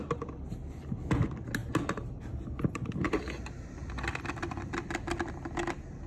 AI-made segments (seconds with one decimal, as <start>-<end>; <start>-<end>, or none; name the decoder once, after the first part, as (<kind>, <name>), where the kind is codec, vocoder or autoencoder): none